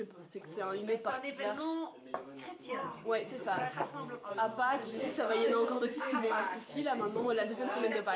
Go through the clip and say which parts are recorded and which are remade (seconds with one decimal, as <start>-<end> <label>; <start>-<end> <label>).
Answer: 0.0-8.2 remade